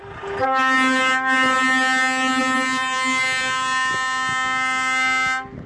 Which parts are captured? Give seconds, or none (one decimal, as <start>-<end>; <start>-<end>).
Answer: 0.0-5.7